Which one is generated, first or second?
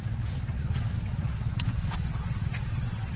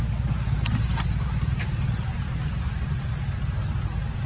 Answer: first